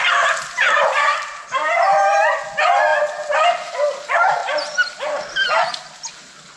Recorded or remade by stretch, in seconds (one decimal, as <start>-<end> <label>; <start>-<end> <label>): 0.0-0.6 recorded; 0.6-2.0 remade; 2.0-4.4 recorded; 4.4-5.7 remade; 5.7-6.6 recorded